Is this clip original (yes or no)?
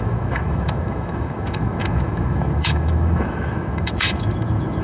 no